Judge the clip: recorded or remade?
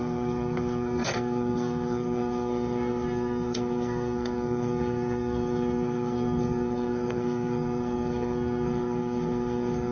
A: remade